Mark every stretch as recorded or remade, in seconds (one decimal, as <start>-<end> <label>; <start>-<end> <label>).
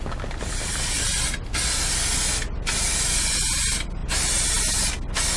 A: 0.0-5.4 recorded